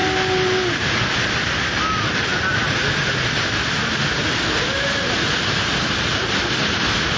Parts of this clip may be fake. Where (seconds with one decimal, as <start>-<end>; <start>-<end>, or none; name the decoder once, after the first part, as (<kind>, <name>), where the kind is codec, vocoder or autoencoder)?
none